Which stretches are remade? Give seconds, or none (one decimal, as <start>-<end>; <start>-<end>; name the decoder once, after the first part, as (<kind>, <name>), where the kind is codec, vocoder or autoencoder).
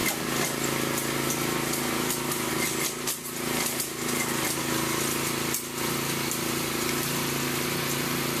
none